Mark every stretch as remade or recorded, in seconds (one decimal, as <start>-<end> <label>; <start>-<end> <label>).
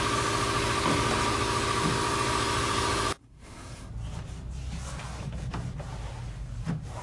0.0-3.2 recorded; 3.2-3.9 remade; 3.9-7.0 recorded